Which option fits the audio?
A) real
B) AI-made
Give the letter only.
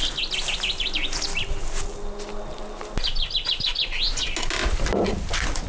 A